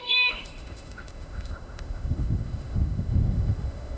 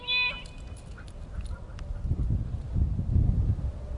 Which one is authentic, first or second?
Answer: second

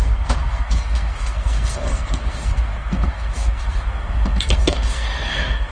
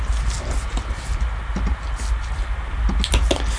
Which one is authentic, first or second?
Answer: second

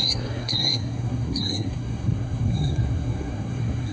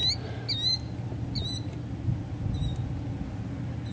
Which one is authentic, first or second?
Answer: second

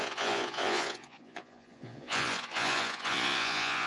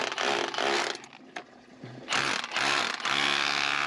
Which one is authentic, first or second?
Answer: second